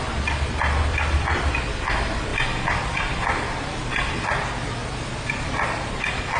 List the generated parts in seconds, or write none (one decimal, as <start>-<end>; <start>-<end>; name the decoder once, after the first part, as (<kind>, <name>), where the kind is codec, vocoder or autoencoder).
0.9-1.9 (vocoder, BigVGAN v2); 2.3-6.4

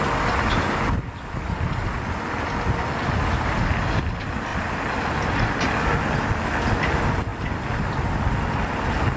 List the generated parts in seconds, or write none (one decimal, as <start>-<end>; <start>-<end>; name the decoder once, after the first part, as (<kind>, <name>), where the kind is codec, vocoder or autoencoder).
none

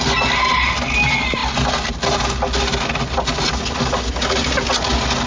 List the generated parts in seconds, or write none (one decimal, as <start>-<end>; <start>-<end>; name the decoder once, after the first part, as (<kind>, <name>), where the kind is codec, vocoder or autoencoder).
none

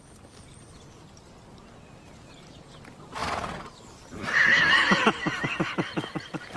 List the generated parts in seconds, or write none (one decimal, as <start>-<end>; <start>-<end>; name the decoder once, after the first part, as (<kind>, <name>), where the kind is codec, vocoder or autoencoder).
none

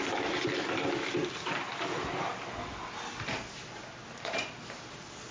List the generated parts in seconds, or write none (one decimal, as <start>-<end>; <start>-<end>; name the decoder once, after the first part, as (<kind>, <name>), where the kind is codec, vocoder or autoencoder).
none

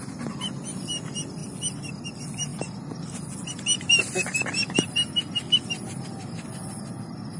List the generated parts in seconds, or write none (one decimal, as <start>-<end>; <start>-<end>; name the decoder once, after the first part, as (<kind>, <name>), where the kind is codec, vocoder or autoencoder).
none